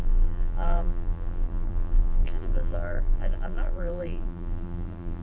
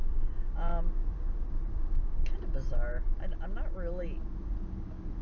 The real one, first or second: second